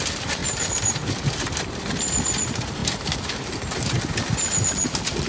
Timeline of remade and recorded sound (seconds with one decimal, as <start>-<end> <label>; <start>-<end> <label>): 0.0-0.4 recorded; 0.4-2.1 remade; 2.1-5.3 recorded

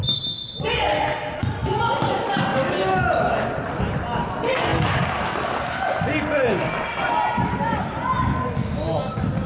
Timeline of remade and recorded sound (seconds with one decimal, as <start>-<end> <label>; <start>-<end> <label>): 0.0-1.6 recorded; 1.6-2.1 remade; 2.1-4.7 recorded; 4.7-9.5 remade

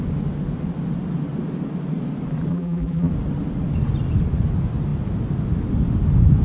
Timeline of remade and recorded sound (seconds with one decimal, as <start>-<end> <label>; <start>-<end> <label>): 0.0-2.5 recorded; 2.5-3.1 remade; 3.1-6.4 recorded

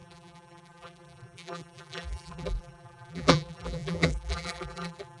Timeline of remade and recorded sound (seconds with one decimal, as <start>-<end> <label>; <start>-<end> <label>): 0.0-5.2 remade

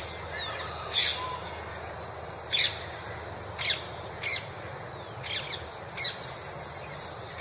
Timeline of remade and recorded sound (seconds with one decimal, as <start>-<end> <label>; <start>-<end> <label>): 0.0-7.4 recorded

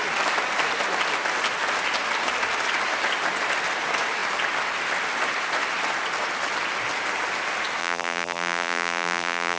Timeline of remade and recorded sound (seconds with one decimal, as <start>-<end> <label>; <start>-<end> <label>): 0.0-7.8 recorded; 7.8-9.6 remade

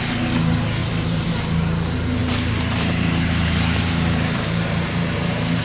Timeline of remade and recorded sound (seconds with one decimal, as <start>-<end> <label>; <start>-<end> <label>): 0.0-0.8 recorded; 0.8-1.3 remade; 1.3-2.2 recorded; 2.2-5.6 remade

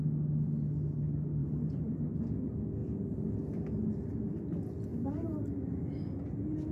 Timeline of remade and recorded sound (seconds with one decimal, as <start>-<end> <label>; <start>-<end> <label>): 0.0-1.4 recorded; 1.4-2.0 remade; 2.0-2.8 recorded; 2.8-3.9 remade; 3.9-4.9 recorded; 4.9-6.0 remade; 6.0-6.7 recorded